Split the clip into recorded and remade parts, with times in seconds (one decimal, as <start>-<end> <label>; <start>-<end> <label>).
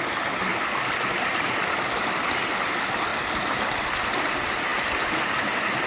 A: 0.0-5.9 recorded